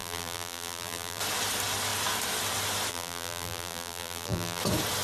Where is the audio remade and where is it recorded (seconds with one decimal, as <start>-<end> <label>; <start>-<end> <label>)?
0.0-1.2 remade; 1.2-2.9 recorded; 2.9-4.6 remade; 4.6-5.0 recorded